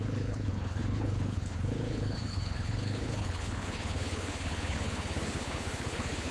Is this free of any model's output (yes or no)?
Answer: no